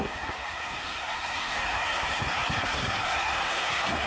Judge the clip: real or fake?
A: fake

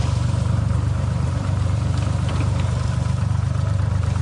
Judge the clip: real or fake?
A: fake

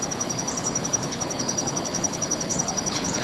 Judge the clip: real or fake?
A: fake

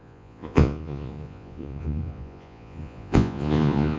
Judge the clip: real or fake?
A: fake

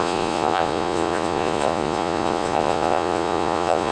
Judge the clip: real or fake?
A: fake